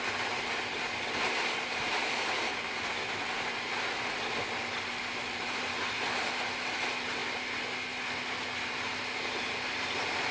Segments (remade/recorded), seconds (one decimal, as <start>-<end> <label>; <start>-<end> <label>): 0.0-10.3 recorded